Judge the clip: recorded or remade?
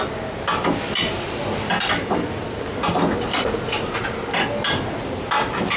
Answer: recorded